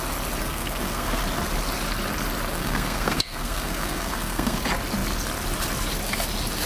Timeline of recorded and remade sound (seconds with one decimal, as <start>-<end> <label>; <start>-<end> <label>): 0.0-0.4 recorded; 0.4-1.2 remade; 1.2-2.5 recorded; 2.5-4.6 remade; 4.6-6.7 recorded